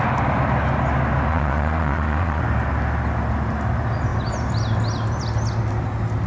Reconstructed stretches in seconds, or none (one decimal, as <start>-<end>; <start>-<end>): 1.3-2.4